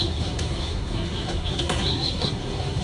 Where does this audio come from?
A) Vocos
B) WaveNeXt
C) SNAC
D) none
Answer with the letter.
C